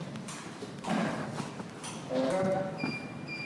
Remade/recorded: recorded